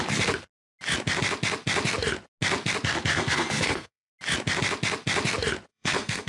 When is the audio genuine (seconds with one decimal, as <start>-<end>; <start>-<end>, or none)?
0.0-3.1; 4.1-5.7